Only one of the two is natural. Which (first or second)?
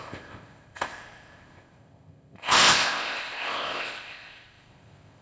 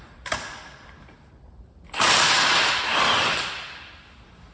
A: second